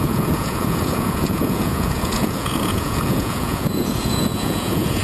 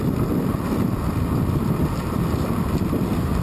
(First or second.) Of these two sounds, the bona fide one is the second